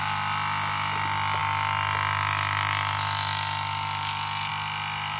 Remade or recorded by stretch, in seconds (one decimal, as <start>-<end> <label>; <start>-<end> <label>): 0.0-5.2 recorded